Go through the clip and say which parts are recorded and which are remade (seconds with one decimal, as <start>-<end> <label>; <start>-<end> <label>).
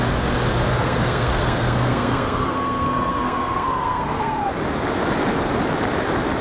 0.0-0.7 recorded; 0.7-4.5 remade; 4.5-6.4 recorded